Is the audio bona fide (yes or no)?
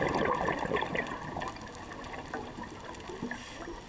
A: yes